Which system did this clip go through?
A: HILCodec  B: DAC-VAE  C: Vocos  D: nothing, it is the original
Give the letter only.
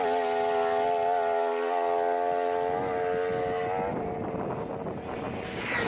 D